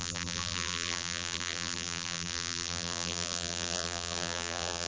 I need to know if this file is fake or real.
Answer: fake